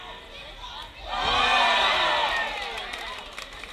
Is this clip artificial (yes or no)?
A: no